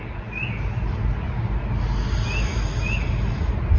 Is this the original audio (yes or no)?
yes